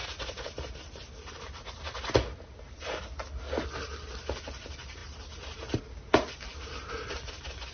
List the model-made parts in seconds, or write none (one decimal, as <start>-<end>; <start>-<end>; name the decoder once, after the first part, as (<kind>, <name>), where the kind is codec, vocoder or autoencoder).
none